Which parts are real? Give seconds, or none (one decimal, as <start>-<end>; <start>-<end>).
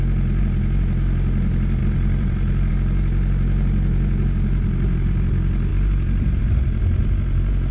0.0-1.8; 2.7-5.7; 6.4-7.7